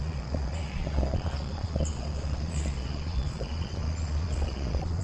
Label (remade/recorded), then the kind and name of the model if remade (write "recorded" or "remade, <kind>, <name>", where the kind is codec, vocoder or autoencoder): remade, vocoder, Vocos